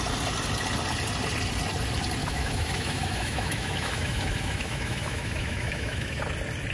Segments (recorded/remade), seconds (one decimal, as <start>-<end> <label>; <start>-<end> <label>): 0.0-2.2 recorded; 2.2-6.2 remade; 6.2-6.7 recorded